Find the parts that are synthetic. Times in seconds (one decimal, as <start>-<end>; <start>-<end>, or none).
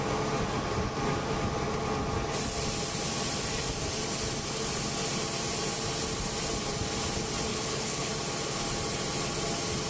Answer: 7.5-8.1